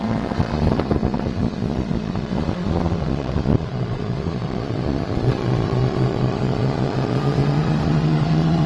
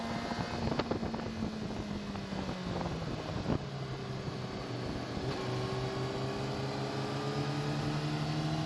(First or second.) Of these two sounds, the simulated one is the first